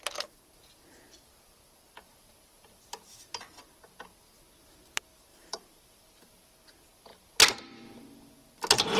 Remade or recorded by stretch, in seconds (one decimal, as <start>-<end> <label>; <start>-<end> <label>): 0.0-2.0 recorded; 2.0-3.6 remade; 3.6-5.3 recorded; 5.3-6.5 remade; 6.5-9.0 recorded